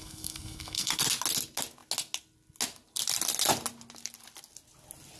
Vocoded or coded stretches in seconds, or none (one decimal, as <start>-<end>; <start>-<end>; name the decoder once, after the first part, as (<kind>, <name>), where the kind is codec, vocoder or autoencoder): 0.0-0.9 (codec, SNAC)